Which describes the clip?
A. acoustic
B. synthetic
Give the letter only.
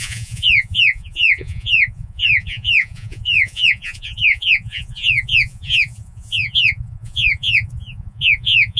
B